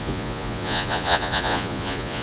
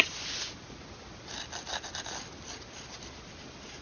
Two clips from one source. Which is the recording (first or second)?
second